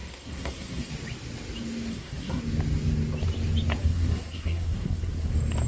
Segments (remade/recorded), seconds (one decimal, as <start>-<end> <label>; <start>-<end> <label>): 0.0-0.9 remade; 0.9-1.9 recorded; 1.9-2.4 remade; 2.4-3.8 recorded; 3.8-5.3 remade; 5.3-5.7 recorded